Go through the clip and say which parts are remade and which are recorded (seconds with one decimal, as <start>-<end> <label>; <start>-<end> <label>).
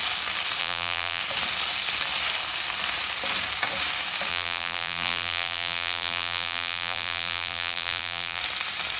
0.0-0.6 recorded; 0.6-1.2 remade; 1.2-4.3 recorded; 4.3-8.4 remade; 8.4-9.0 recorded